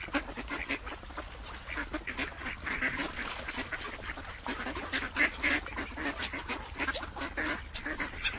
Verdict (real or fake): real